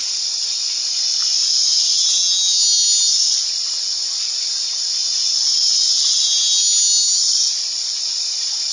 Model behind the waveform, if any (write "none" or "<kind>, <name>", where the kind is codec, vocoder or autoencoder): none